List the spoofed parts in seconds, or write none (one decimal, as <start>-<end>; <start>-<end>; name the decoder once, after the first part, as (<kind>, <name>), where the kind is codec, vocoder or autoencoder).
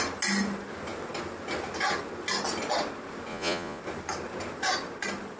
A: 3.3-3.8 (vocoder, Vocos)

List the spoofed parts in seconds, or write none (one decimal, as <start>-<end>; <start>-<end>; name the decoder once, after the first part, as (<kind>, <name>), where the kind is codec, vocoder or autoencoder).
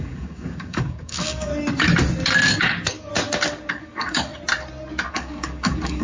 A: 0.0-1.5 (codec, DAC); 2.6-3.1; 3.7-4.3; 5.1-6.0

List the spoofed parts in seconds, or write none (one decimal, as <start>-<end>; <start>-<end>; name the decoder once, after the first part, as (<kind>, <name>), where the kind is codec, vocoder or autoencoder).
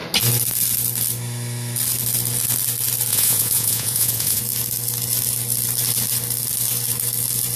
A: 3.1-4.4 (vocoder, Vocos)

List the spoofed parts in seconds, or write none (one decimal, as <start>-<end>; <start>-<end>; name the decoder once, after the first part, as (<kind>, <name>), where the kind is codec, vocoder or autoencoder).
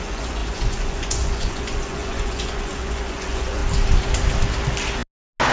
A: 0.0-3.6 (vocoder, Vocos)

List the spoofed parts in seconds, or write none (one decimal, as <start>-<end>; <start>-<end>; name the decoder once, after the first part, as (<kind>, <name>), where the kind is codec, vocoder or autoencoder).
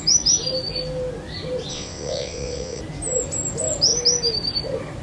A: 1.7-2.8 (vocoder, WaveNeXt)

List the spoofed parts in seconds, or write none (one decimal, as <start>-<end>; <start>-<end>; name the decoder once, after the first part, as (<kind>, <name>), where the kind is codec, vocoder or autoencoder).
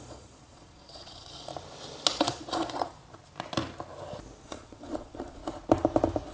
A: 0.0-1.5 (vocoder, Vocos); 2.1-3.0; 4.4-5.4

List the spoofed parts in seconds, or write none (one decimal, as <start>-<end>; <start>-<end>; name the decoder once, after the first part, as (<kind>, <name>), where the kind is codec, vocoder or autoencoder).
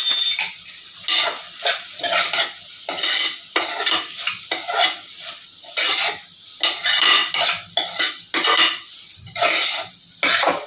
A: none